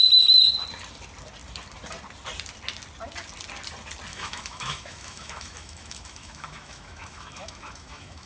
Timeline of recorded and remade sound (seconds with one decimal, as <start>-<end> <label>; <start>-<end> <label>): 0.0-4.1 recorded; 4.1-8.3 remade